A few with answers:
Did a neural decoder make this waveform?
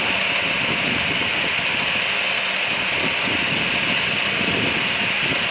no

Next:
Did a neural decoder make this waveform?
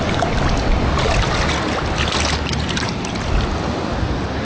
no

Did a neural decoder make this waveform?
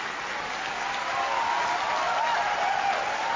no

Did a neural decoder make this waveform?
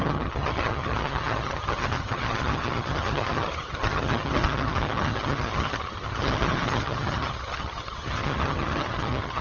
yes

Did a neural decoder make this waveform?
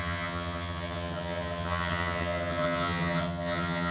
yes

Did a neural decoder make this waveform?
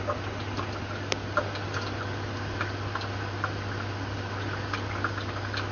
no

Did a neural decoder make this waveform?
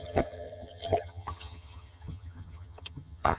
yes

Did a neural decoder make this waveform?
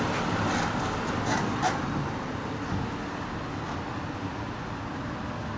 no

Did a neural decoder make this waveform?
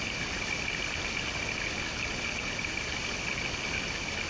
no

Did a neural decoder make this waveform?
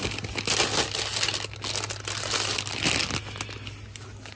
no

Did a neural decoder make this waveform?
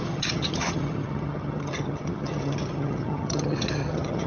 yes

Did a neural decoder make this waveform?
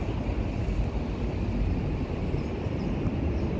no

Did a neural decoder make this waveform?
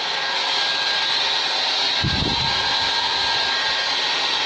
no